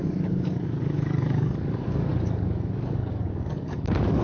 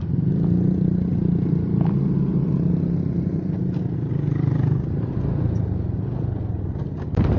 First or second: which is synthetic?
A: first